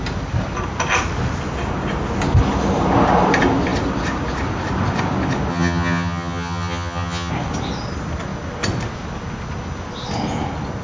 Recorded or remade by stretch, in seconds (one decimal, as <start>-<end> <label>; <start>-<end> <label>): 0.0-5.5 recorded; 5.5-7.3 remade; 7.3-10.8 recorded